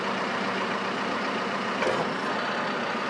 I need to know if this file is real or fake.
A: real